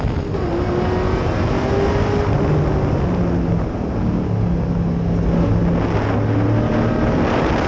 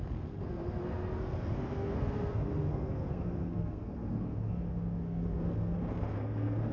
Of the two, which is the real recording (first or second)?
first